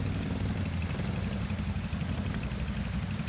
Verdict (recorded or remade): recorded